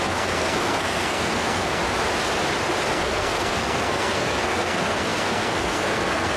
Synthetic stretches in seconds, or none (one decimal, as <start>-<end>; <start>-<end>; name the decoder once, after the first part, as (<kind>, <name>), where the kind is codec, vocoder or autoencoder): 0.0-1.8 (codec, SNAC); 2.9-6.4

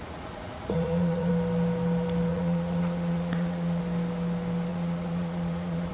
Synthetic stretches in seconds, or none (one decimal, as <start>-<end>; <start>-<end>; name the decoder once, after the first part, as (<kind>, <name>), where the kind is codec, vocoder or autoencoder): 0.0-1.3 (vocoder, Vocos); 2.3-3.8; 4.7-5.9

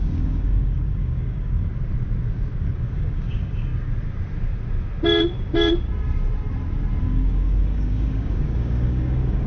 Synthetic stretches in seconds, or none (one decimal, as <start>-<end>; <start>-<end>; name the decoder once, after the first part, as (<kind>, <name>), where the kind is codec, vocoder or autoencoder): 0.0-1.7 (codec, DAC); 2.6-3.7; 7.0-9.5

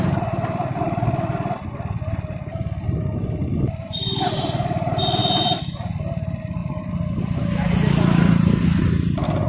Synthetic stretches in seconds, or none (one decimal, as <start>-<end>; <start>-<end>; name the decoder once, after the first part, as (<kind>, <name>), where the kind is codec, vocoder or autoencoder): none

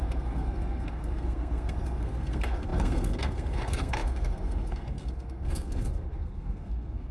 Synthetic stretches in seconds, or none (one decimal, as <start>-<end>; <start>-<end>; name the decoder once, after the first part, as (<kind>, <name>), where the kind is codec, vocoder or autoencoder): 0.0-7.1 (codec, SNAC)